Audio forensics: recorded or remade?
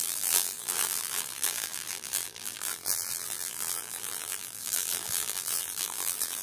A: remade